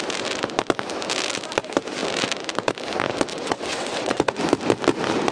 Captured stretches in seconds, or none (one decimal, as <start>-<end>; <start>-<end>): 0.0-3.3; 4.4-5.3